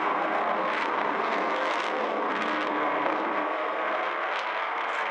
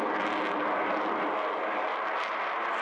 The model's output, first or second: first